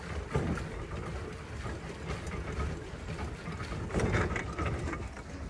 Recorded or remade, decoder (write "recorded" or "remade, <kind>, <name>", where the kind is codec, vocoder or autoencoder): recorded